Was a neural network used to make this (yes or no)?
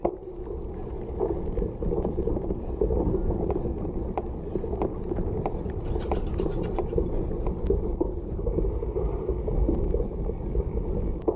no